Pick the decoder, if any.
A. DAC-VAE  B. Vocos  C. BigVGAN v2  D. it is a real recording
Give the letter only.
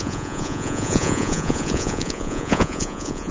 B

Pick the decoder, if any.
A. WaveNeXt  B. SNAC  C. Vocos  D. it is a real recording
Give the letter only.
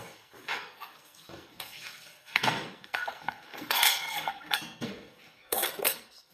B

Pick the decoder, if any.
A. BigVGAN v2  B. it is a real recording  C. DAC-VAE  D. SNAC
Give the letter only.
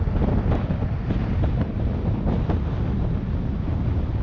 B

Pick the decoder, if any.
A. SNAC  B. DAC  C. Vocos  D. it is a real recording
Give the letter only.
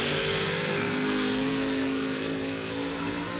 A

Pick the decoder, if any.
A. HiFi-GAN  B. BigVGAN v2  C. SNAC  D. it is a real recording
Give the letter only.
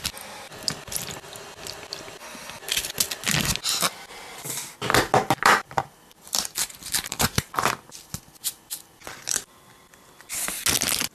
D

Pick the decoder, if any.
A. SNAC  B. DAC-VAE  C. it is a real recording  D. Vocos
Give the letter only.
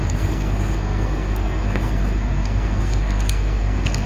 A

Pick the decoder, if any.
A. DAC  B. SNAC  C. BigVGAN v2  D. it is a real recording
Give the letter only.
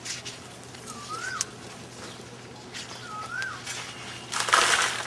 D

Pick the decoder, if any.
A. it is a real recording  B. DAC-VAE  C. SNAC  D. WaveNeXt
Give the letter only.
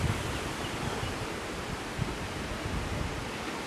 A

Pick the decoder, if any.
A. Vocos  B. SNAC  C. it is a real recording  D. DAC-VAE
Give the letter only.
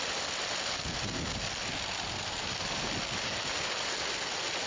C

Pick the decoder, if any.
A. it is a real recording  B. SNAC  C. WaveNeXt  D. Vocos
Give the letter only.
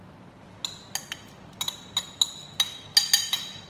A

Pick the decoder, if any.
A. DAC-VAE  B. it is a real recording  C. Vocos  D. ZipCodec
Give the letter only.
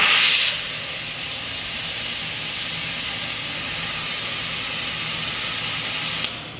B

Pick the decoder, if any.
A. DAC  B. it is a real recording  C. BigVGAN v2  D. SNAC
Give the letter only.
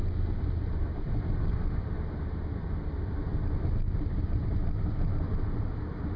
B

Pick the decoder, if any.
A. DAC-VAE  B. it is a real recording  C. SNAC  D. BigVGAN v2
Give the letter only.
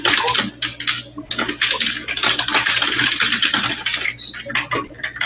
B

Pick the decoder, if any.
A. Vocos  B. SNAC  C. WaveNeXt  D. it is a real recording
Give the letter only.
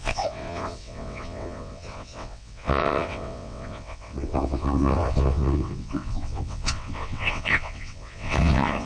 C